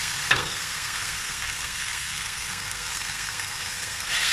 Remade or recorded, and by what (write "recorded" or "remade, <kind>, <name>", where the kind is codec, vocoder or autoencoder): remade, codec, SNAC